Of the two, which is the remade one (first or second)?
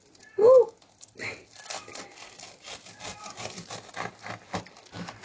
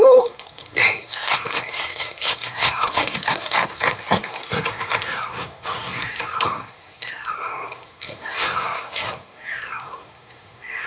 second